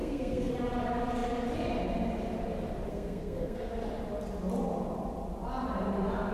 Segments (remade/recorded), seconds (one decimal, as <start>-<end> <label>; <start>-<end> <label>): 0.0-0.5 remade; 0.5-2.9 recorded; 2.9-3.7 remade; 3.7-6.3 recorded